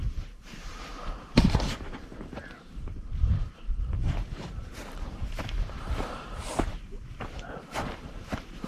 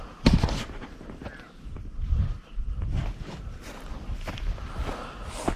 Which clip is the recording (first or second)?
second